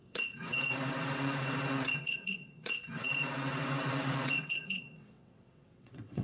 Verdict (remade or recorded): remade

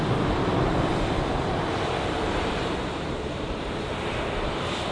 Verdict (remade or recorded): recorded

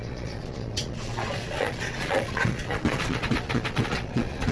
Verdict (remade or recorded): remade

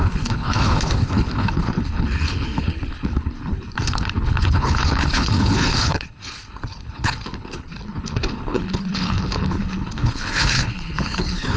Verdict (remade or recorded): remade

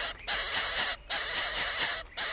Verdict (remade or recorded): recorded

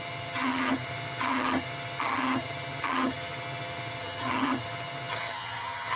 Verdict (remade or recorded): remade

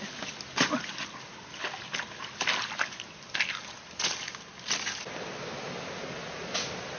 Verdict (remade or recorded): recorded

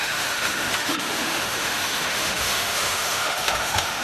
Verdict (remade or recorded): remade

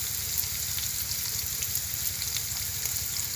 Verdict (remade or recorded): recorded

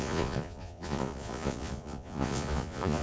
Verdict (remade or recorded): remade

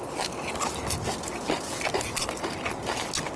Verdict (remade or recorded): recorded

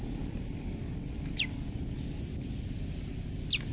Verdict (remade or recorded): recorded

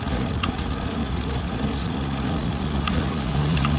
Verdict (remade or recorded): remade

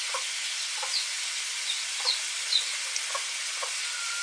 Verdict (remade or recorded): recorded